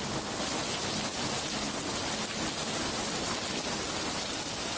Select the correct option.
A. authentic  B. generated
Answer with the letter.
A